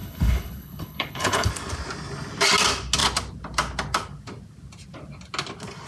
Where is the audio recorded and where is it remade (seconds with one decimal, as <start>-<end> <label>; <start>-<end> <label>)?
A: 0.0-1.5 remade; 1.5-5.9 recorded